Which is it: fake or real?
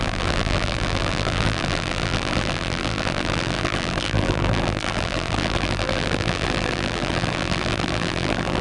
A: fake